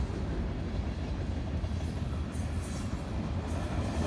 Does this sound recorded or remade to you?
recorded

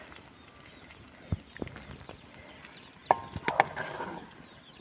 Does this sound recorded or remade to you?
recorded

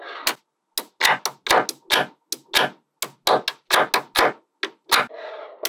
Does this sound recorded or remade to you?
recorded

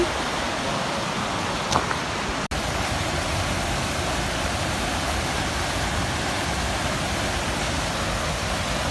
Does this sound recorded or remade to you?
recorded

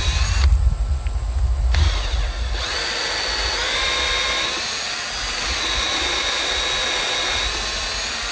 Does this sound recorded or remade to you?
recorded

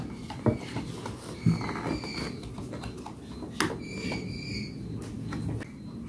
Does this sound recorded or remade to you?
recorded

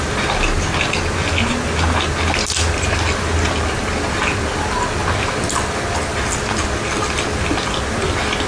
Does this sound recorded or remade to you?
recorded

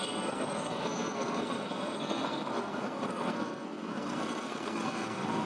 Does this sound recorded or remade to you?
remade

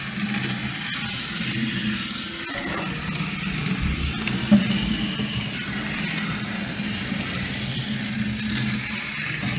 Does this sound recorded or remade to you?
recorded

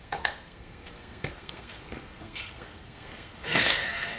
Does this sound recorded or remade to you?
remade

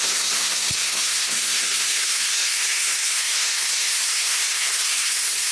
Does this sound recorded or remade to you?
remade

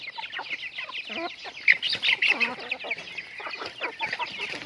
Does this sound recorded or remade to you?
recorded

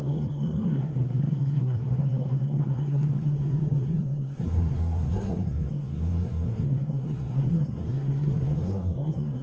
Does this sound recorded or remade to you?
remade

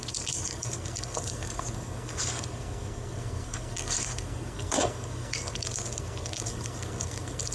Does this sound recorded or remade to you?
remade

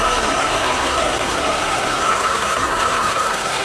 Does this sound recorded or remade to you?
remade